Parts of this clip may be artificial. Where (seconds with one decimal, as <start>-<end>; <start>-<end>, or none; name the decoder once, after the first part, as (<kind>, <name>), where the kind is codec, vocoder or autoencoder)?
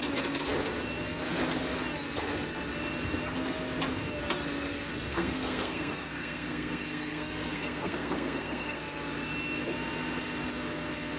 5.1-8.8 (codec, SNAC)